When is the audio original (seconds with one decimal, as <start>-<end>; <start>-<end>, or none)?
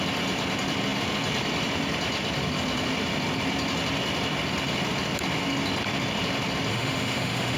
0.0-6.7